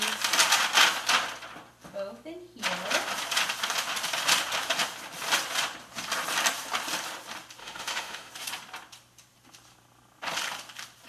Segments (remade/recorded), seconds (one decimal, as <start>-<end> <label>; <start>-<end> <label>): 0.0-7.6 recorded; 7.6-8.3 remade; 8.3-11.1 recorded